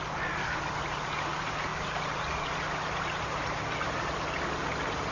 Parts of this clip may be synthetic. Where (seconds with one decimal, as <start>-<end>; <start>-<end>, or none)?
none